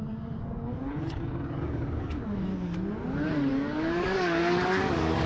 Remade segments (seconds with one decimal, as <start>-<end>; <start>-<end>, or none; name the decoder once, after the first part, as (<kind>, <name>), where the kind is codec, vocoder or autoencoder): 0.0-2.5 (codec, DAC); 3.5-5.3